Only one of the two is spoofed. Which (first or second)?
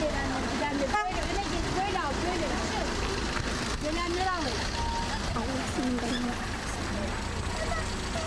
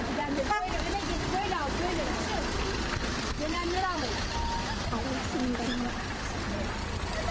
second